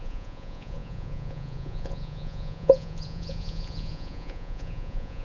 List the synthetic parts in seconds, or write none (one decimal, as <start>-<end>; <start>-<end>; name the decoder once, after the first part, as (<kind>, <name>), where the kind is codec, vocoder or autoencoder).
0.0-5.2 (vocoder, Vocos)